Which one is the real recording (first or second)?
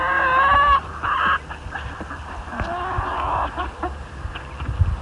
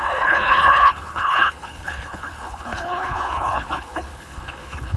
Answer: first